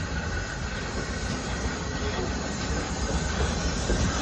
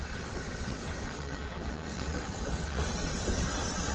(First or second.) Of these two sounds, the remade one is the second